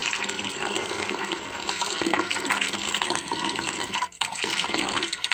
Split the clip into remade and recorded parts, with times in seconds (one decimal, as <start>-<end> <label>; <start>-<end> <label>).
0.0-5.3 remade